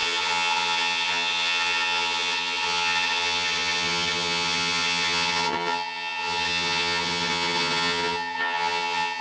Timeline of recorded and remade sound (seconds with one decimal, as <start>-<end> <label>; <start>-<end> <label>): 0.0-9.2 remade